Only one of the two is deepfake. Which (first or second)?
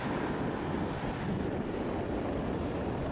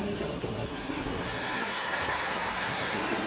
second